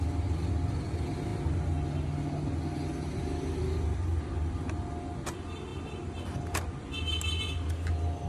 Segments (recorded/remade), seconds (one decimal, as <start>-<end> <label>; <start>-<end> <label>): 0.0-8.3 recorded